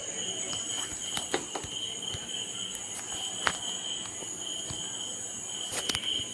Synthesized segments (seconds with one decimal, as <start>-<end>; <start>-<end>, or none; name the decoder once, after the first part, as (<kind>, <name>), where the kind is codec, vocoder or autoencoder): none